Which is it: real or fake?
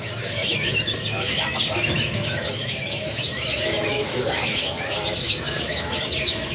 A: fake